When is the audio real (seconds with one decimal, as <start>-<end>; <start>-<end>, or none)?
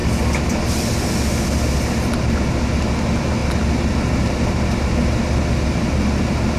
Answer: 0.0-6.6